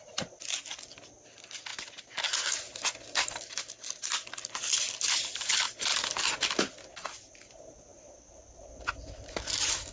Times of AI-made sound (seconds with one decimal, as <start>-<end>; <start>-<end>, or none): none